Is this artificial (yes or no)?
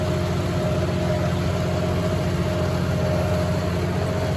no